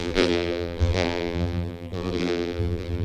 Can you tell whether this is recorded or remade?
remade